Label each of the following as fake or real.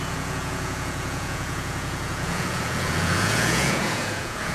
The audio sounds fake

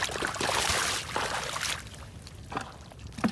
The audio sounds real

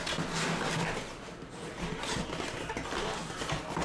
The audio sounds real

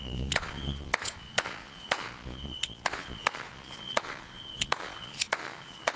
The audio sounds fake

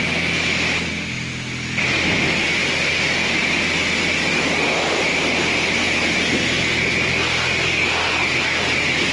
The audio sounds real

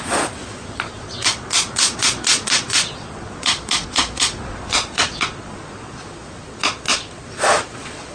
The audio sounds fake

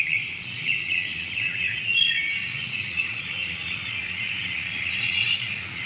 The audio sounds fake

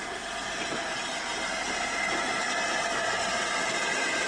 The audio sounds real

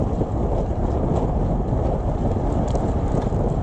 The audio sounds real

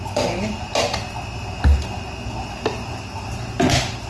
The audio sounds real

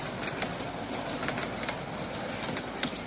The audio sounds real